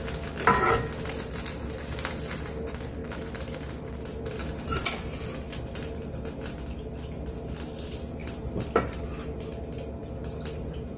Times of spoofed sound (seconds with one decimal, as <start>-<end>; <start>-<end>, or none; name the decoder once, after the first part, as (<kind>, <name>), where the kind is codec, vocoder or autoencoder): none